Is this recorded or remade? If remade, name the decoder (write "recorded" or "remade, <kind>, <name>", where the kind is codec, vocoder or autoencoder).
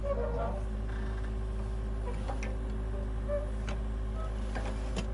recorded